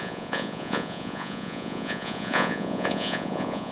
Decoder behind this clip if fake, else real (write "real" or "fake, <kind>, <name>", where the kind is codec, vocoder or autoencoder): fake, vocoder, Vocos